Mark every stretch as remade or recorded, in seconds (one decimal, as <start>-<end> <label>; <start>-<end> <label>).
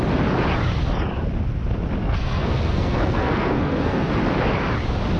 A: 0.0-2.0 recorded; 2.0-4.1 remade; 4.1-5.2 recorded